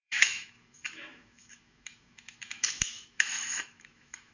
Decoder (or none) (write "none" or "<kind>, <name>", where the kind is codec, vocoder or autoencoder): autoencoder, DAC-VAE